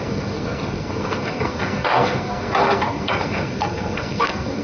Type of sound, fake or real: fake